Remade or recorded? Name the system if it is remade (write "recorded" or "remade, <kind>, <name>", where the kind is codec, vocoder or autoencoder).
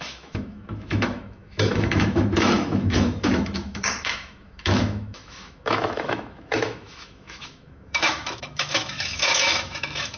remade, autoencoder, DAC-VAE